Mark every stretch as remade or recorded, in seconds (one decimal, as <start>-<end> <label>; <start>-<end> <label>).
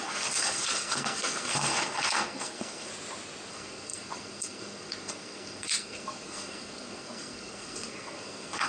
0.0-2.9 remade; 2.9-3.5 recorded; 3.5-8.7 remade